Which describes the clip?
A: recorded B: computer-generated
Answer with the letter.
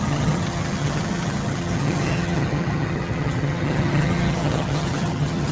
B